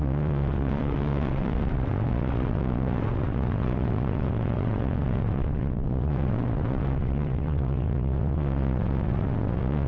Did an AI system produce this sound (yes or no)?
yes